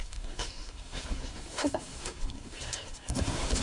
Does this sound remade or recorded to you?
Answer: remade